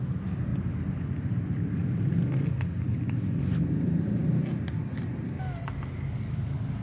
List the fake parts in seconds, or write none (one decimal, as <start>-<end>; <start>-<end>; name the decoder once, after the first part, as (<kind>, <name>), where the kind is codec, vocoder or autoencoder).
none